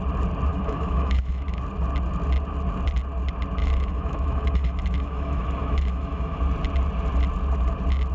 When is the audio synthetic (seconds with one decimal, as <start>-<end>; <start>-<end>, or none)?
0.5-1.6; 3.6-6.4